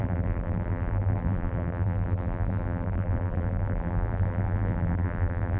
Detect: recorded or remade remade